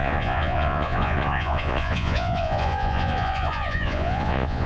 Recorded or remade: remade